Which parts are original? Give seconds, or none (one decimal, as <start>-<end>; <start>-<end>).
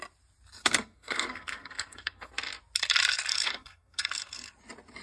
0.0-0.6; 2.3-3.3; 4.5-5.0